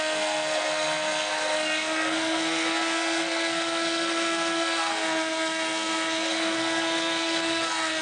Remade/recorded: remade